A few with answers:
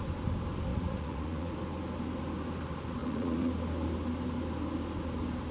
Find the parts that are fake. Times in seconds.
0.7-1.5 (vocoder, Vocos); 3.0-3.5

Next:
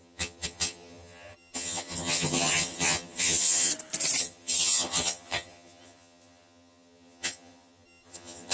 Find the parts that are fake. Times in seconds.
0.0-3.7 (vocoder, HiFi-GAN); 4.2-8.5

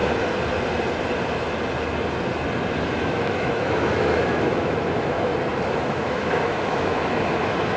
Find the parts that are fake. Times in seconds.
2.8-5.3 (autoencoder, DAC-VAE); 5.8-7.8